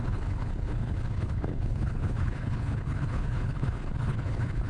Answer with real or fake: fake